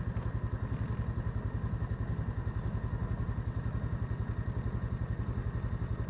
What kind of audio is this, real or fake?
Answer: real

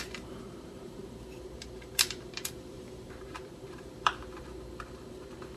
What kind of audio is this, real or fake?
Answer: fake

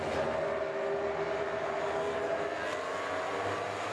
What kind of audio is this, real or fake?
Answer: real